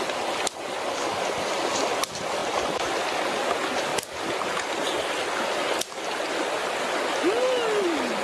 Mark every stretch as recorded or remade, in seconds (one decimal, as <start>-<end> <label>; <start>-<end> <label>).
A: 0.0-8.2 recorded

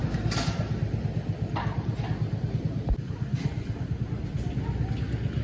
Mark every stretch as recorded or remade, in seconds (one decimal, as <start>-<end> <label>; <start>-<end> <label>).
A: 0.0-5.4 recorded

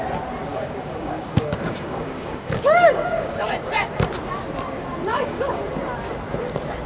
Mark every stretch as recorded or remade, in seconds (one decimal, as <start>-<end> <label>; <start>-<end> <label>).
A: 0.0-0.5 recorded; 0.5-3.5 remade; 3.5-5.1 recorded; 5.1-5.6 remade; 5.6-6.9 recorded

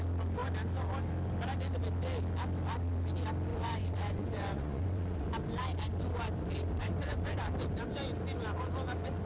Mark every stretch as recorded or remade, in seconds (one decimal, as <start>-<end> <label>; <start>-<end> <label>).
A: 0.0-3.5 recorded; 3.5-5.2 remade; 5.2-6.8 recorded; 6.8-7.4 remade; 7.4-9.3 recorded

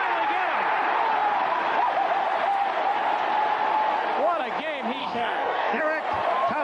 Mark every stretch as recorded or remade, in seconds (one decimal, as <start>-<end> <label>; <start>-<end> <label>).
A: 0.0-5.0 recorded; 5.0-5.8 remade; 5.8-6.6 recorded

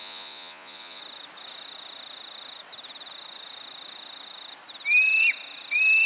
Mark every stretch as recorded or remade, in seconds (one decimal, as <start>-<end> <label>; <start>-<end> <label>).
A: 0.0-1.0 remade; 1.0-6.1 recorded

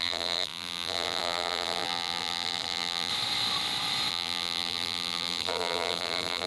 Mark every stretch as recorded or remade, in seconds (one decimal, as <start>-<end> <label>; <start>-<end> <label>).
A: 0.0-3.1 remade; 3.1-4.1 recorded; 4.1-6.5 remade